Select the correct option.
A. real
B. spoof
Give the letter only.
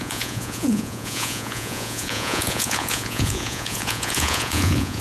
B